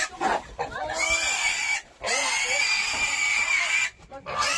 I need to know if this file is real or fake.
real